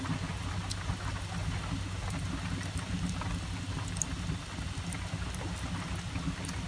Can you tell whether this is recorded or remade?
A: recorded